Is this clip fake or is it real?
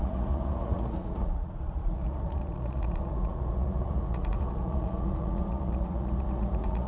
fake